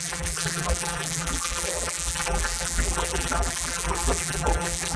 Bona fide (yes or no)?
no